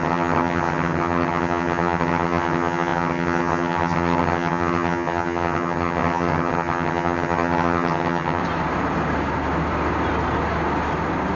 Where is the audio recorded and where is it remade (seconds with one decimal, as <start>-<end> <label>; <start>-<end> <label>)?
0.0-8.4 remade; 8.4-11.4 recorded